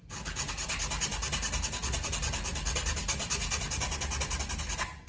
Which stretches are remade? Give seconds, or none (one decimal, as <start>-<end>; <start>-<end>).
none